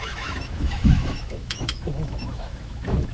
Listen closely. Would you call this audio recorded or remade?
remade